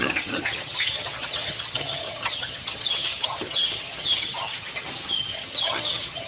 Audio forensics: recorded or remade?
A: remade